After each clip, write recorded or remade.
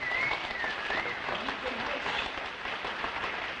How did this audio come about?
recorded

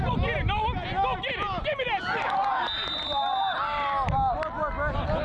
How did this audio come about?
recorded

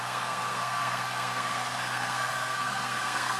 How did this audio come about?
remade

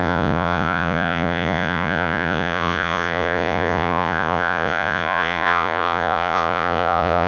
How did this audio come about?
remade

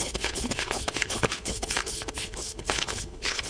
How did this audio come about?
remade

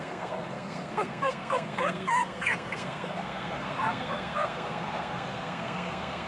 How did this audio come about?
remade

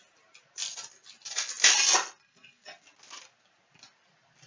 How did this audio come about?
recorded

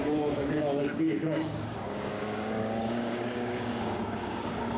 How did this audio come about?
remade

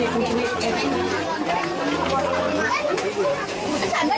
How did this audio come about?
recorded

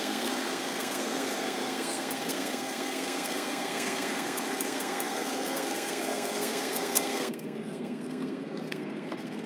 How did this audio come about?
remade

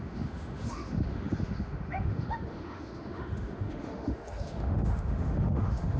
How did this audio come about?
remade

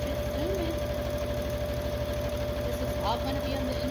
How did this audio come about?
recorded